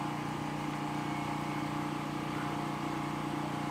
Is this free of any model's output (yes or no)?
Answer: yes